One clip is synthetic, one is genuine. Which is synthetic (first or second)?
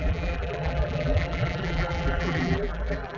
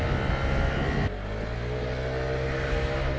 first